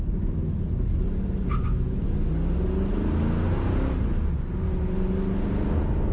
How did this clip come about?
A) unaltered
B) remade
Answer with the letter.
A